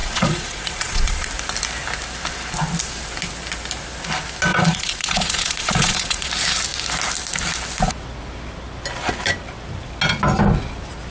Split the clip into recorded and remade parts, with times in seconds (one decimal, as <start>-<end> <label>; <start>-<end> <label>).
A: 0.0-1.3 remade; 1.3-4.5 recorded; 4.5-6.3 remade; 6.3-11.1 recorded